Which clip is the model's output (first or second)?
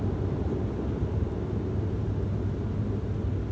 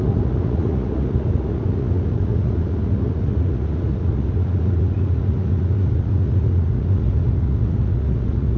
second